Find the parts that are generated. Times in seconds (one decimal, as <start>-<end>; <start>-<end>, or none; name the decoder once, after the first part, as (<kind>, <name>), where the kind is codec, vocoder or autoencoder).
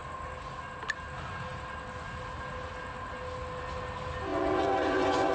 4.3-5.3 (vocoder, Vocos)